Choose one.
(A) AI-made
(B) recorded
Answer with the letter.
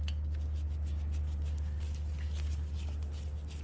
B